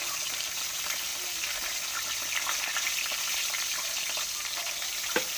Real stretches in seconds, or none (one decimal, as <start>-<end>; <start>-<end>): 1.1-4.3